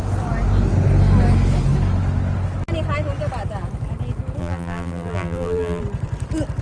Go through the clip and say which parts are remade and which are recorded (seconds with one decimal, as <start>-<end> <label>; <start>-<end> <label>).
0.0-4.4 recorded; 4.4-5.8 remade; 5.8-6.6 recorded